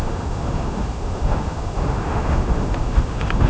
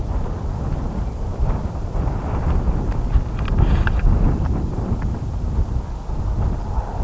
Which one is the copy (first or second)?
first